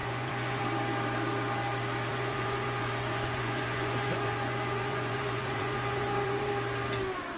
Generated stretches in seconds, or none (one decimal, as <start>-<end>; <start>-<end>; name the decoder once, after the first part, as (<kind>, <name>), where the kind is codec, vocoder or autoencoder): 0.0-0.6 (vocoder, Vocos); 2.1-6.5